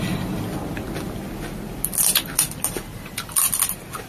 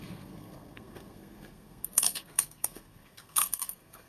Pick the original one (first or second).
first